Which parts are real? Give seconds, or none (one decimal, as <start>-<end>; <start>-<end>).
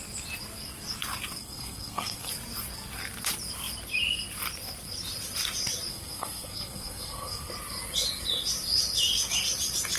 0.0-1.4; 2.3-5.9; 7.5-10.0